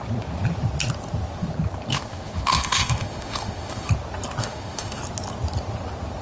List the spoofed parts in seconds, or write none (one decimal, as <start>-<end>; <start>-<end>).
1.9-3.9; 4.4-5.0